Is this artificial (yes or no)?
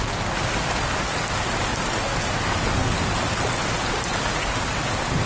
no